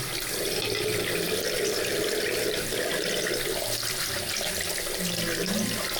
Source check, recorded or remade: recorded